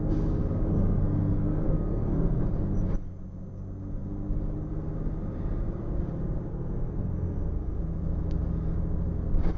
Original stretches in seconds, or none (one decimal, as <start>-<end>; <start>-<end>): 0.0-0.7; 2.4-6.5; 7.8-9.6